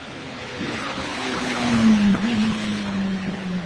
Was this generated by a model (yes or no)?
yes